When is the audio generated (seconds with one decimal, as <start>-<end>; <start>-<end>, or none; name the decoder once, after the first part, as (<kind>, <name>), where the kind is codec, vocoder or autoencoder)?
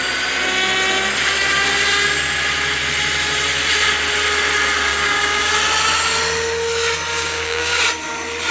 4.9-5.5 (codec, DAC); 7.1-7.8